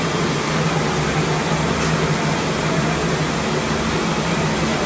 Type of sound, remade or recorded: recorded